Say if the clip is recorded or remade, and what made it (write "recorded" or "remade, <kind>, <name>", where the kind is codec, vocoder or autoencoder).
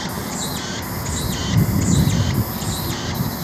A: recorded